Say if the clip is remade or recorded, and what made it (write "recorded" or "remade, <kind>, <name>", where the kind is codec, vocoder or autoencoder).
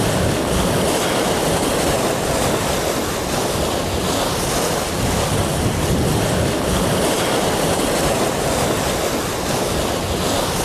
recorded